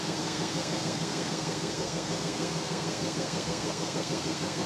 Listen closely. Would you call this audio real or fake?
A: fake